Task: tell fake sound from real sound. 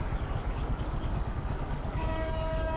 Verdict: fake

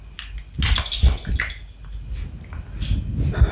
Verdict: real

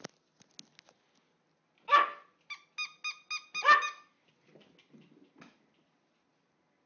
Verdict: real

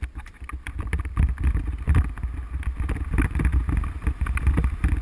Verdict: real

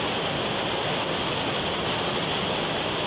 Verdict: real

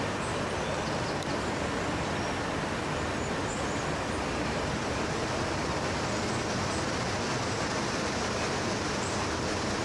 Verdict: fake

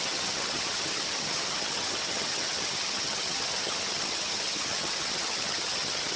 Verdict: fake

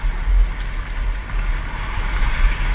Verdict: real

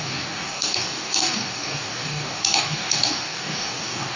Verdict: fake